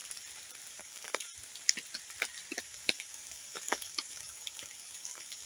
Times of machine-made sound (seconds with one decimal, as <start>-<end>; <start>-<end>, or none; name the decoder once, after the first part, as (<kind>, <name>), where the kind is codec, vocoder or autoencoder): 0.7-1.3 (codec, DAC); 2.6-5.5